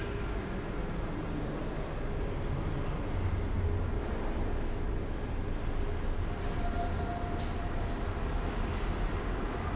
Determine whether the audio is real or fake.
real